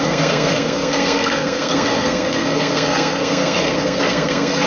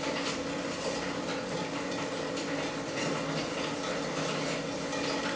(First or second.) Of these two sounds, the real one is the second